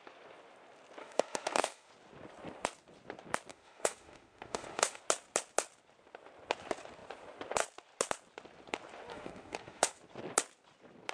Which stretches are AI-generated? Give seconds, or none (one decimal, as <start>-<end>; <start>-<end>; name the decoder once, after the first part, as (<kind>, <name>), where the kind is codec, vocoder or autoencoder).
1.0-1.9 (autoencoder, DAC-VAE); 3.5-5.0; 9.1-10.0